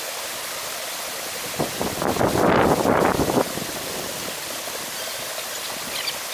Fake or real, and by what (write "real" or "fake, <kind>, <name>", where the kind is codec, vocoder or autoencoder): real